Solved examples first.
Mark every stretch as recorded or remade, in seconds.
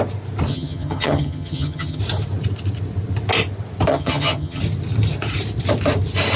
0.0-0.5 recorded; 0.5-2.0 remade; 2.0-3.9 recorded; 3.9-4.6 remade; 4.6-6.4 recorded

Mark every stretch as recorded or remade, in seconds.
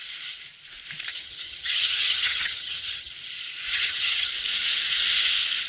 0.0-1.1 recorded; 1.1-3.1 remade; 3.1-3.7 recorded; 3.7-4.3 remade; 4.3-5.7 recorded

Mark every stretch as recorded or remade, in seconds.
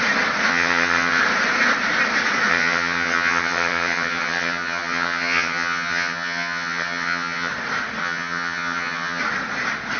0.0-0.5 recorded; 0.5-1.2 remade; 1.2-2.5 recorded; 2.5-7.5 remade; 7.5-8.0 recorded; 8.0-9.2 remade; 9.2-10.0 recorded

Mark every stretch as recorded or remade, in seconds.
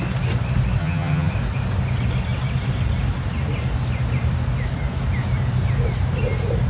0.0-0.8 recorded; 0.8-1.3 remade; 1.3-6.7 recorded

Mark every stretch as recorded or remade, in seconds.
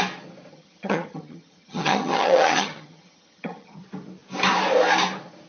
0.0-0.5 recorded; 0.5-3.8 remade; 3.8-5.5 recorded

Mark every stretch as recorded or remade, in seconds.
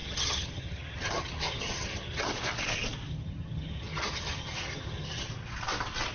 0.0-2.4 remade; 2.4-3.1 recorded; 3.1-5.3 remade; 5.3-6.1 recorded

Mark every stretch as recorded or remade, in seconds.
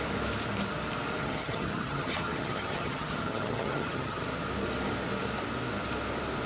0.0-1.2 recorded; 1.2-4.2 remade; 4.2-6.5 recorded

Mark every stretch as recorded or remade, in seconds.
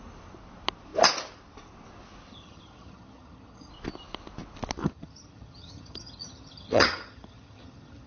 0.0-2.3 recorded; 2.3-3.7 remade; 3.7-4.8 recorded; 4.8-8.1 remade